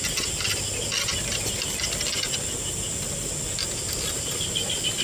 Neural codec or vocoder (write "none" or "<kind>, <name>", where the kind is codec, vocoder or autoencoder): none